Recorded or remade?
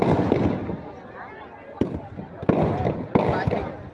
recorded